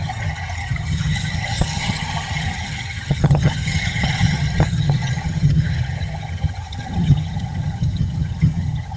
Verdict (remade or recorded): remade